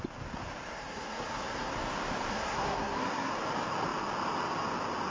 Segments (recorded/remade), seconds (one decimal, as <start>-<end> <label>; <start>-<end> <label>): 0.0-0.7 recorded; 0.7-1.7 remade; 1.7-2.3 recorded; 2.3-3.3 remade; 3.3-5.1 recorded